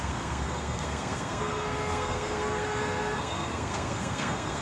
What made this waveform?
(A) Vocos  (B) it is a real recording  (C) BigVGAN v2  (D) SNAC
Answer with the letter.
D